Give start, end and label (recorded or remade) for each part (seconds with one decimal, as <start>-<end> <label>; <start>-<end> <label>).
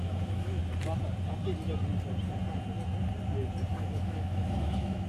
0.0-0.6 remade; 0.6-3.7 recorded; 3.7-5.1 remade